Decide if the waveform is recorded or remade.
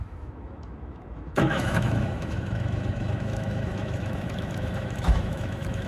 remade